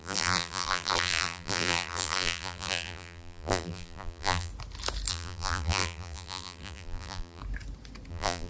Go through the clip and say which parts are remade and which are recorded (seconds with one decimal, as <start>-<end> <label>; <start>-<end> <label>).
0.0-4.5 remade; 4.5-5.1 recorded; 5.1-7.4 remade; 7.4-8.1 recorded; 8.1-8.5 remade